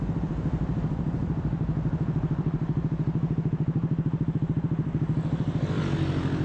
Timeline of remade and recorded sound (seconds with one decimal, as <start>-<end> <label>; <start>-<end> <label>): 0.0-6.4 recorded